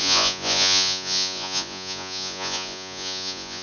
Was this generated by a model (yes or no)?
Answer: yes